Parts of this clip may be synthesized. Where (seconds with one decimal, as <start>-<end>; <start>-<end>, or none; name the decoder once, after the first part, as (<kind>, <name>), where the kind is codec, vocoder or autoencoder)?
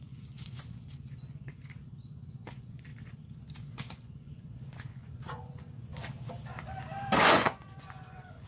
0.0-2.9 (vocoder, Vocos); 3.5-5.9; 7.2-8.5